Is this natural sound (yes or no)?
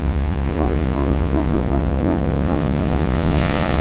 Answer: no